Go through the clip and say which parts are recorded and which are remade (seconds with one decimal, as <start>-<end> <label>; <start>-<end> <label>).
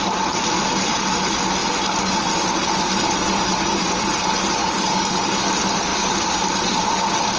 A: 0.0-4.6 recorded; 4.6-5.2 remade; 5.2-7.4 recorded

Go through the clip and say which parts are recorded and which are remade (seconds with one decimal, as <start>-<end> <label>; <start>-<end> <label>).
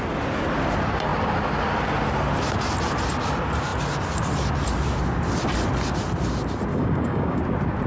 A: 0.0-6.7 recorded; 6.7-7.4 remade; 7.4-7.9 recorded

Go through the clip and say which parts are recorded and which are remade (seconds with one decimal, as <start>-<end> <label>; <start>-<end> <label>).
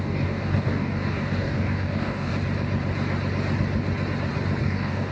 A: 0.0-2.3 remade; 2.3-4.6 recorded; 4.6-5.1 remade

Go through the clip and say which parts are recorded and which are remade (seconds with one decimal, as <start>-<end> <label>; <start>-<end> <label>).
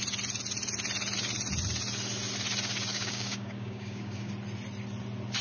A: 0.0-2.9 recorded; 2.9-4.3 remade; 4.3-5.4 recorded